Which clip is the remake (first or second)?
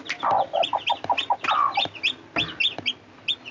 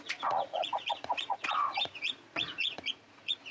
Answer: second